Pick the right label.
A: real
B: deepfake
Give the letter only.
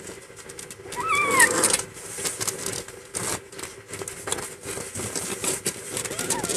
A